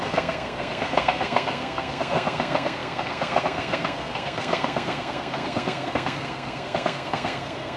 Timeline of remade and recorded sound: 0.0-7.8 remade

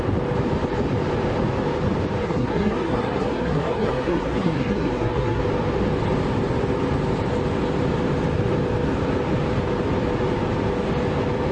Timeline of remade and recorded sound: 0.0-2.2 recorded; 2.2-5.4 remade; 5.4-11.5 recorded

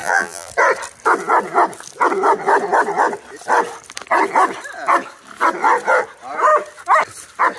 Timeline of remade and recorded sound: 0.0-0.5 remade; 0.5-7.6 recorded

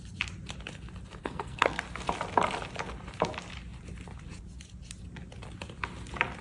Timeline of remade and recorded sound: 0.0-1.2 recorded; 1.2-1.8 remade; 1.8-6.4 recorded

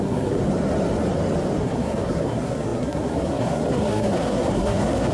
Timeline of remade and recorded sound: 0.0-0.4 remade; 0.4-1.6 recorded; 1.6-5.1 remade

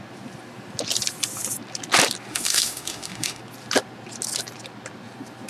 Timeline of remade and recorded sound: 0.0-2.3 recorded; 2.3-3.4 remade; 3.4-5.5 recorded

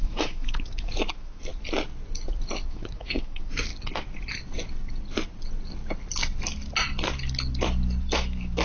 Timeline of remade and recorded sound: 0.0-1.5 remade; 1.5-2.6 recorded; 2.6-3.7 remade; 3.7-8.0 recorded; 8.0-8.6 remade

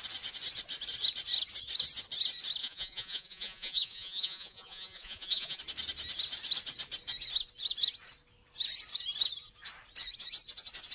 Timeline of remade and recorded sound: 0.0-2.6 recorded; 2.6-5.6 remade; 5.6-10.9 recorded